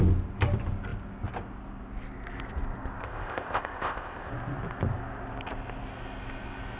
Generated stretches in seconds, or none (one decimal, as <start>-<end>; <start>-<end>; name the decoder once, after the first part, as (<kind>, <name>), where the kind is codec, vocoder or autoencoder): 3.0-4.3 (codec, ZipCodec)